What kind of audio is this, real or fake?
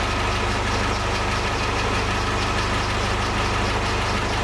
real